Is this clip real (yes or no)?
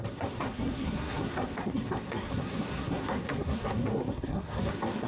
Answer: no